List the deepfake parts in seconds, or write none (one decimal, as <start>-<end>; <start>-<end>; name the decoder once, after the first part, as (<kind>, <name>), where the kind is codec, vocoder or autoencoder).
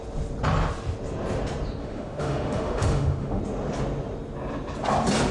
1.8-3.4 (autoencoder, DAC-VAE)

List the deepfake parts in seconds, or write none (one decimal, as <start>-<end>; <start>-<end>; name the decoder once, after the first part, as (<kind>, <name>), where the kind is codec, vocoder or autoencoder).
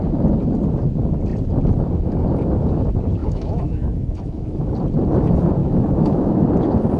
3.2-4.7 (autoencoder, DAC-VAE); 5.6-6.3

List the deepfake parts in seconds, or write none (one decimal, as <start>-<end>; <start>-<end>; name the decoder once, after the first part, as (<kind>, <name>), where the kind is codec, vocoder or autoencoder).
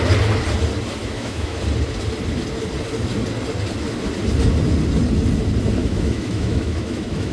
1.0-1.6 (autoencoder, DAC-VAE); 5.8-7.3